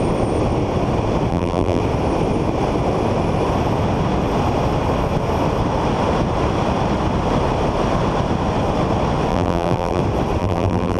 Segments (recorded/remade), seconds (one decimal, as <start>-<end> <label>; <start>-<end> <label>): 0.0-1.3 recorded; 1.3-1.8 remade; 1.8-9.3 recorded; 9.3-10.0 remade; 10.0-10.4 recorded; 10.4-11.0 remade